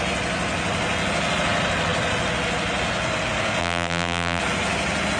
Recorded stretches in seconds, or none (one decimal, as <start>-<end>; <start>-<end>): 0.0-3.6; 4.4-5.2